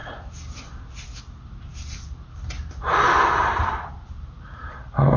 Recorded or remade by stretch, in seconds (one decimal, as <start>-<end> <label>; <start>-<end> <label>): 0.0-1.2 recorded; 1.2-1.7 remade; 1.7-3.4 recorded; 3.4-5.2 remade